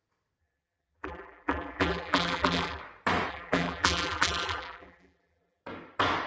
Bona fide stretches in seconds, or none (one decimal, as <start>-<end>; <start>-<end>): 0.0-0.4; 2.8-3.3; 5.6-6.3